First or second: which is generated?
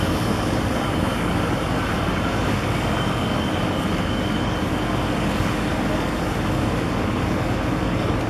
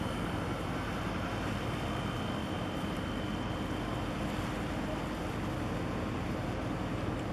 first